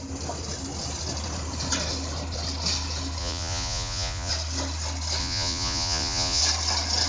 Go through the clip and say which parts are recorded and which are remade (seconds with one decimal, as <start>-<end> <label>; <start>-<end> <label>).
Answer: 0.0-3.2 recorded; 3.2-4.3 remade; 4.3-5.2 recorded; 5.2-6.4 remade; 6.4-7.1 recorded